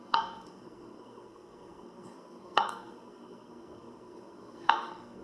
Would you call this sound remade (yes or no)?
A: yes